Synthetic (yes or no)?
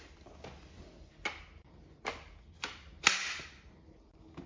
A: no